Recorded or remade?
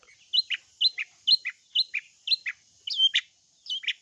recorded